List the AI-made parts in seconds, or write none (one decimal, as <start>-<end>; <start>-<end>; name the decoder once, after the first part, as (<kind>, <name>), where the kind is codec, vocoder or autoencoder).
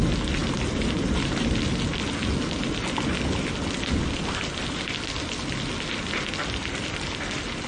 0.4-1.7 (vocoder, BigVGAN v2)